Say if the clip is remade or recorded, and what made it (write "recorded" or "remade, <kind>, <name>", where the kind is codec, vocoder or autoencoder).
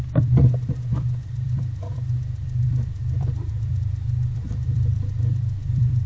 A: remade, vocoder, BigVGAN v2